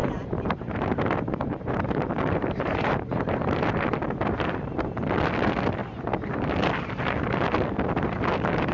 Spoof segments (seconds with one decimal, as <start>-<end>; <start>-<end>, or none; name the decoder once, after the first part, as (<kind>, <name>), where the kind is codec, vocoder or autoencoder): 0.0-3.4 (vocoder, BigVGAN v2); 4.0-4.9